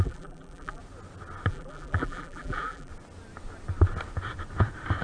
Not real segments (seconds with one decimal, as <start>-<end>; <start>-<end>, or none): 0.0-0.8; 1.5-2.9